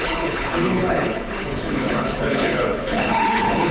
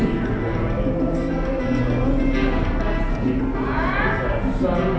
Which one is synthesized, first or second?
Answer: first